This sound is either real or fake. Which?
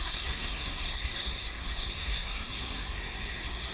fake